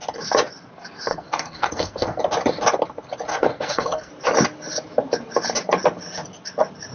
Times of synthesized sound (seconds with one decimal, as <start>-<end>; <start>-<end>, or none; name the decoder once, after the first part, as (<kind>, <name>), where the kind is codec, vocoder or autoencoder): 1.1-2.2 (codec, SNAC); 3.3-4.1